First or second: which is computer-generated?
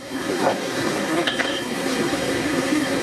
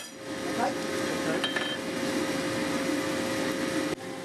first